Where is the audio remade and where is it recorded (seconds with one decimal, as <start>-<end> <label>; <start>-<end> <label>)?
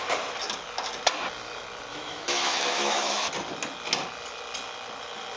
0.0-1.9 recorded; 1.9-3.3 remade; 3.3-5.4 recorded